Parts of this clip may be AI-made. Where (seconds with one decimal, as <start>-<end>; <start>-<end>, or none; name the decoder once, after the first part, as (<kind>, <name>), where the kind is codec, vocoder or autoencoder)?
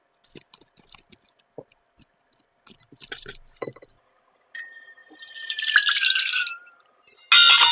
none